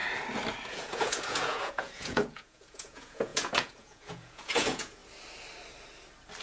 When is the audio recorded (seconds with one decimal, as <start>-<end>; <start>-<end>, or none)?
0.0-0.7; 5.0-6.4